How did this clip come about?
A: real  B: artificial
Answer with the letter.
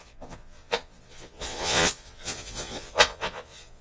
B